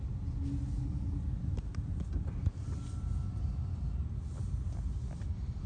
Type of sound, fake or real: real